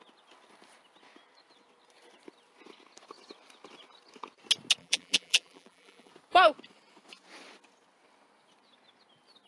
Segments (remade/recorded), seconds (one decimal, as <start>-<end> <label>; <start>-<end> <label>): 0.0-4.8 recorded; 4.8-6.1 remade; 6.1-9.5 recorded